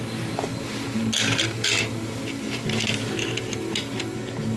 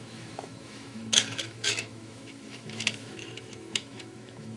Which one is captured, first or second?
first